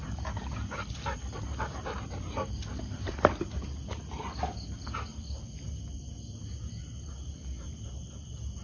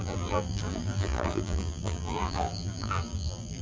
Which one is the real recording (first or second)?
first